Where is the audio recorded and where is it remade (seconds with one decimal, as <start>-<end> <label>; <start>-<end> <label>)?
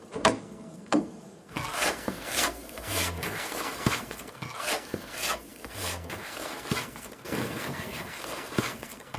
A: 0.0-9.2 remade